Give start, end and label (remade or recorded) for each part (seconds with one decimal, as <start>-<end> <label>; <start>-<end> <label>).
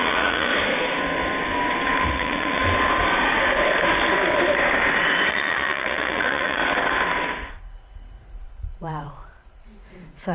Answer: 0.0-0.5 remade; 0.5-2.0 recorded; 2.0-2.6 remade; 2.6-5.3 recorded; 5.3-6.6 remade; 6.6-7.5 recorded; 7.5-10.3 remade